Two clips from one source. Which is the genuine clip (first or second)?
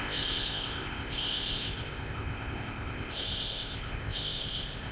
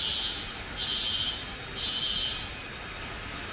second